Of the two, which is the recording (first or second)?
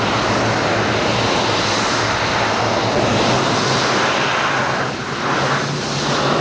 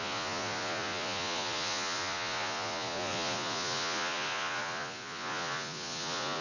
first